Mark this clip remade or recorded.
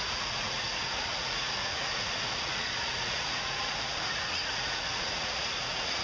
remade